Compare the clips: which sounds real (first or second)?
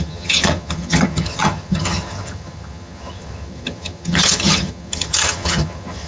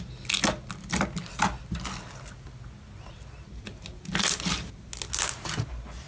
second